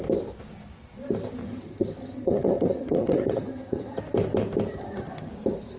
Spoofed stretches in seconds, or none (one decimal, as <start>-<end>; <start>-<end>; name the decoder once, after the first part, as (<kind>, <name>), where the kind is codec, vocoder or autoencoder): 1.4-4.0 (vocoder, HiFi-GAN); 4.7-5.3